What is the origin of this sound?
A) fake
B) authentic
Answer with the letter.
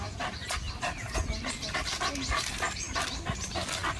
B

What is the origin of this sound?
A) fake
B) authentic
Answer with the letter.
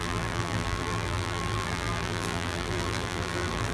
A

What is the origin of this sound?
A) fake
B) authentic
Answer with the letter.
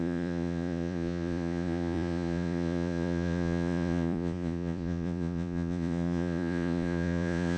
A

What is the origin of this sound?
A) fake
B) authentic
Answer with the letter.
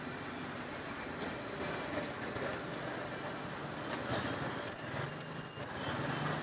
B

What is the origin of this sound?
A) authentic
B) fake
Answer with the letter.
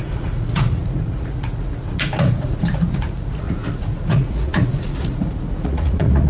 B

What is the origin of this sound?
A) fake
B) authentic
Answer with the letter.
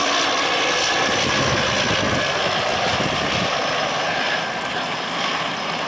B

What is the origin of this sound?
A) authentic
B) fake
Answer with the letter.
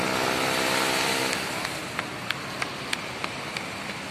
A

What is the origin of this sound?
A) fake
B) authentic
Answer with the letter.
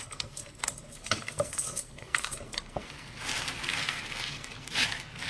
A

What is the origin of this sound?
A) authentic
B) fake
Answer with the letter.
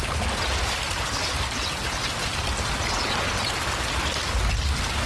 A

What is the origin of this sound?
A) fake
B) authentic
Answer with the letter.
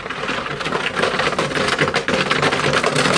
B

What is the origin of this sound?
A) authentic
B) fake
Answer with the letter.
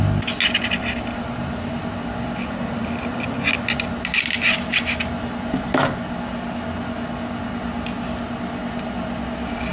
A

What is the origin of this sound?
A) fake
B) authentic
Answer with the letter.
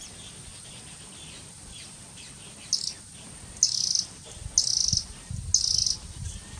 B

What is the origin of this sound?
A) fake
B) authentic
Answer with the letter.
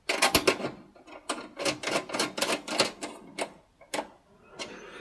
B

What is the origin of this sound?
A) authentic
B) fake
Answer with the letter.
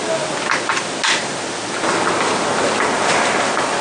A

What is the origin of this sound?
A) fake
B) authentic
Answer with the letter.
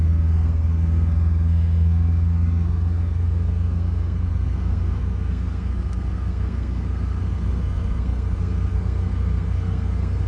A